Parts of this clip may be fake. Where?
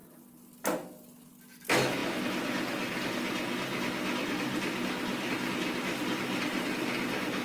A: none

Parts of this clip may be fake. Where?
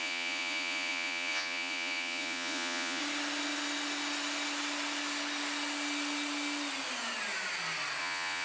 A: 0.0-3.0 (vocoder, Vocos); 8.0-8.4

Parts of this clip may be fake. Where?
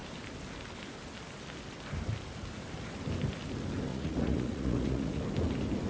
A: 3.9-5.2 (vocoder, Vocos)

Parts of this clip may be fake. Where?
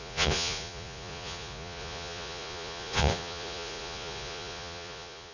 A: 0.0-5.3 (vocoder, Vocos)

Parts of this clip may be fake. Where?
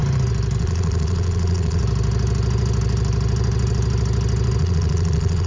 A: 0.6-1.8 (vocoder, Vocos); 4.6-5.5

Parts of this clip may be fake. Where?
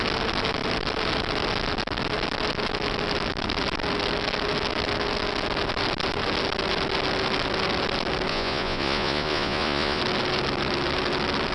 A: 8.3-10.0 (vocoder, Vocos)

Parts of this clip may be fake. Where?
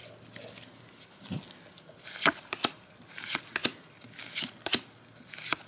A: none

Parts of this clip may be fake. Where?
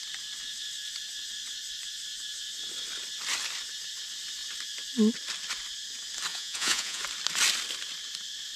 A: 6.3-7.0 (vocoder, Vocos)